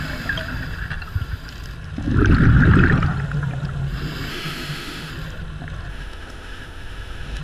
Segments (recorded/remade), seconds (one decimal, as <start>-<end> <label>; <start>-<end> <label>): 0.0-4.3 recorded; 4.3-5.1 remade; 5.1-5.9 recorded; 5.9-7.4 remade